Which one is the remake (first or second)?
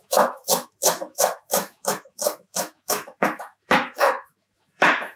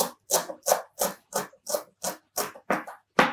first